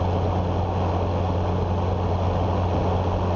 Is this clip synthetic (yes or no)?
no